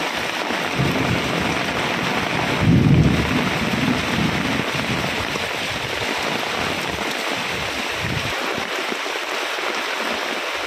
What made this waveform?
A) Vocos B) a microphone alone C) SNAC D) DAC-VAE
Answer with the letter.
B